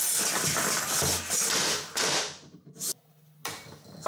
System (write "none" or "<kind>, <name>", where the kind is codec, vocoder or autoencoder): none